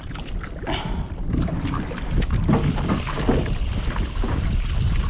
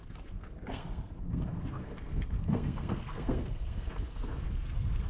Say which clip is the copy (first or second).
second